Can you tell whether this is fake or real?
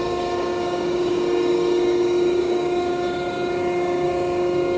fake